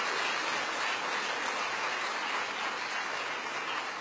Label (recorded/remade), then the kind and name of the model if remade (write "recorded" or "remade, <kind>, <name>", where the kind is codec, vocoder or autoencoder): recorded